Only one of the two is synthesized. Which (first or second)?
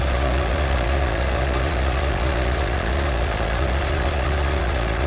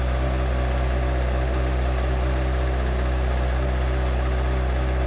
first